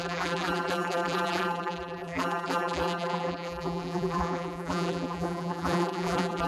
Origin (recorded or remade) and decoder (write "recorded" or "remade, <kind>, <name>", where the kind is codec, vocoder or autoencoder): remade, vocoder, BigVGAN v2